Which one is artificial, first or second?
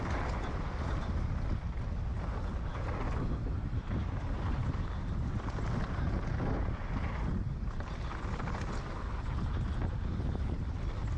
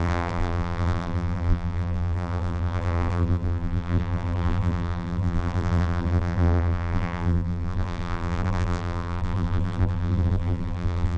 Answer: second